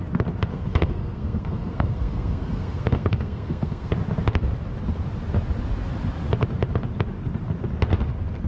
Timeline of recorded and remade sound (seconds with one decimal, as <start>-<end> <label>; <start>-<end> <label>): 0.0-0.5 recorded; 0.5-3.9 remade; 3.9-8.5 recorded